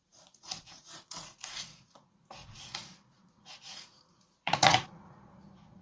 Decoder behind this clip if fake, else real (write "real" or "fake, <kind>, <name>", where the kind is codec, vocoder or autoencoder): fake, vocoder, Vocos